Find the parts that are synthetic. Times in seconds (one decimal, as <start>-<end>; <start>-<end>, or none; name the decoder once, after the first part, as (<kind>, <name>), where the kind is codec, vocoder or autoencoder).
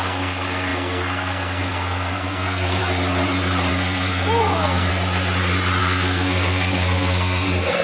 0.0-2.8 (codec, SNAC); 3.7-4.9; 5.8-7.8